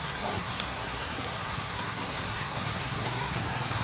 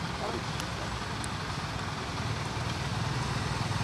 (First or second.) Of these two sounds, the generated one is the first